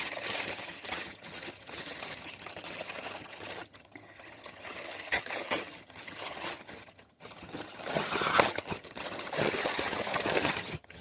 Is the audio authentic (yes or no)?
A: no